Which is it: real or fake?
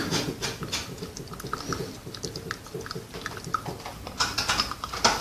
real